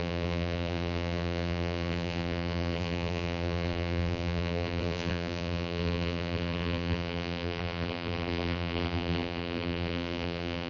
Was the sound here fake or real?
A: fake